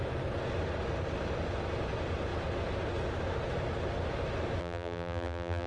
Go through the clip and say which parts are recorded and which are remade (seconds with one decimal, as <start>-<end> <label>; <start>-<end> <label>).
0.0-4.6 recorded; 4.6-5.7 remade